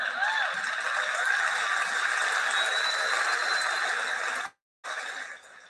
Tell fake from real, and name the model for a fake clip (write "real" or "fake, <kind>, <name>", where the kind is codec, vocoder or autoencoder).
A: real